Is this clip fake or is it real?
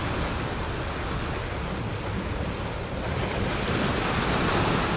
real